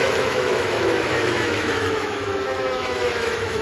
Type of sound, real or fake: fake